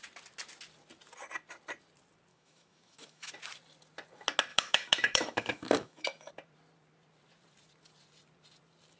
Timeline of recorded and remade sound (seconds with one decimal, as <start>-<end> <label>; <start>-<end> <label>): 0.0-2.3 recorded; 2.3-3.3 remade; 3.3-4.5 recorded; 4.5-6.3 remade; 6.3-9.0 recorded